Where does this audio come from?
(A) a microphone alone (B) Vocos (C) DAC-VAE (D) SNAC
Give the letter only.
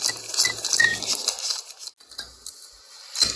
A